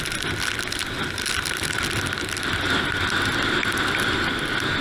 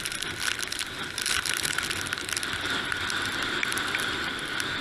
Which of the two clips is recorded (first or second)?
first